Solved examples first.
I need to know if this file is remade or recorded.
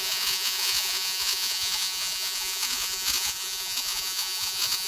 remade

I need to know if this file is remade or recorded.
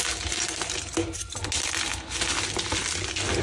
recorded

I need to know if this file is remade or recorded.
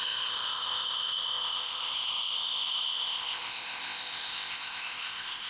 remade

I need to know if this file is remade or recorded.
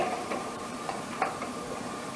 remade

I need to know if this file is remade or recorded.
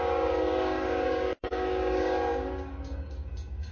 remade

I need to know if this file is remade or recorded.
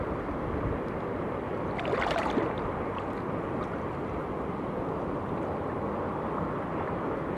recorded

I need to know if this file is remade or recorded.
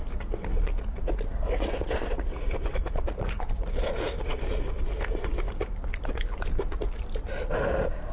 recorded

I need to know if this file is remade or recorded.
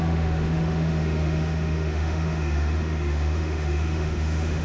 remade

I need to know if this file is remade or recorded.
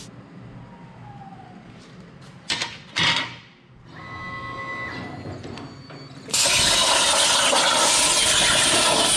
recorded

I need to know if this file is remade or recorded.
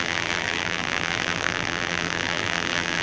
remade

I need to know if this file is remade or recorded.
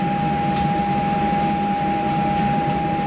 recorded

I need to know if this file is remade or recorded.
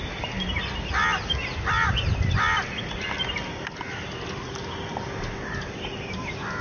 recorded